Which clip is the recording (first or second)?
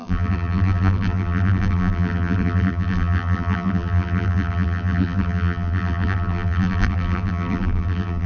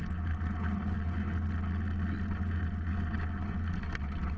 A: second